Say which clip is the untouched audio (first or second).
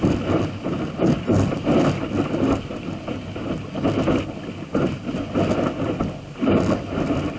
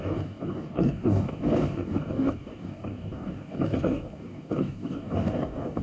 first